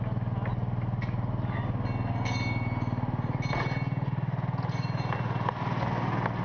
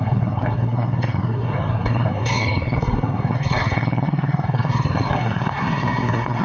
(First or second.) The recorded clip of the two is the first